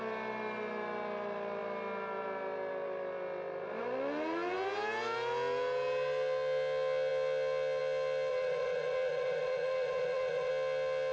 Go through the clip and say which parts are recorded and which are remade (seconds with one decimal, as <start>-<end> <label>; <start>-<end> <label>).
0.0-8.3 recorded; 8.3-10.5 remade; 10.5-11.1 recorded

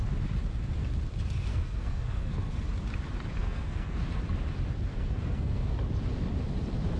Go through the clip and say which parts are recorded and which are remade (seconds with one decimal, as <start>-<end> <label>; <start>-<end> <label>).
0.0-1.5 recorded; 1.5-2.6 remade; 2.6-3.4 recorded; 3.4-4.0 remade; 4.0-4.9 recorded; 4.9-5.7 remade; 5.7-7.0 recorded

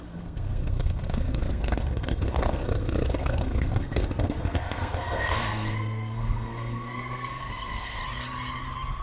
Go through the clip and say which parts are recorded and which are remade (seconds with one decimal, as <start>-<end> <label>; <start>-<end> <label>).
0.0-8.0 remade; 8.0-9.0 recorded

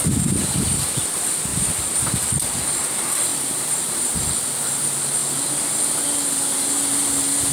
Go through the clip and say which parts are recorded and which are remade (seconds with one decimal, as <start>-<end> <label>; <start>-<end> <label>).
0.0-1.5 recorded; 1.5-2.5 remade; 2.5-3.3 recorded; 3.3-4.3 remade; 4.3-7.5 recorded

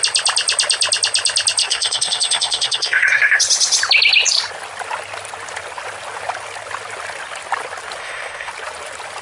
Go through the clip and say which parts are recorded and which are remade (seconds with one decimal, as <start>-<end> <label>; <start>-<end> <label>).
0.0-1.6 recorded; 1.6-3.4 remade; 3.4-8.0 recorded; 8.0-8.5 remade; 8.5-9.2 recorded

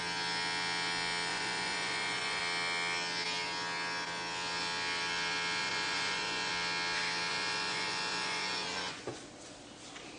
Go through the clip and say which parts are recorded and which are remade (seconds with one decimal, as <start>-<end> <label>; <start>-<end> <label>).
0.0-1.3 recorded; 1.3-2.4 remade; 2.4-5.6 recorded; 5.6-6.5 remade; 6.5-7.3 recorded; 7.3-9.2 remade; 9.2-10.2 recorded